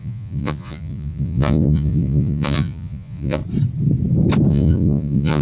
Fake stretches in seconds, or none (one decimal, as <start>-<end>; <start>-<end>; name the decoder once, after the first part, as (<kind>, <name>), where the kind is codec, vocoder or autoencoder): 0.0-3.4 (vocoder, Vocos); 4.5-5.4

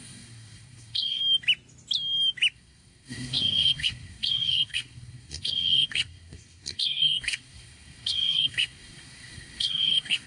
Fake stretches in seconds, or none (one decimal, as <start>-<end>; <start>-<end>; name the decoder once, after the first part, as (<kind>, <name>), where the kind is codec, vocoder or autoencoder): 0.0-1.2 (codec, SNAC); 2.5-10.3

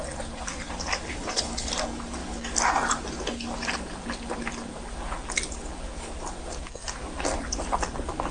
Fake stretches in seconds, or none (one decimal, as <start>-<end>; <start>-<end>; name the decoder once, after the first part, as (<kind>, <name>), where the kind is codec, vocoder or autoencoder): 1.1-1.7 (codec, HILCodec)